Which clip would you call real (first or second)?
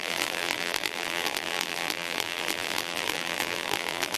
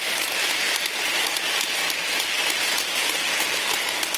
second